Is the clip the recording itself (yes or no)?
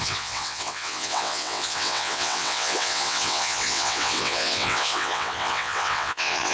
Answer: no